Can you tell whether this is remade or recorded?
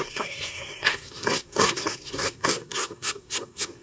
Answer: remade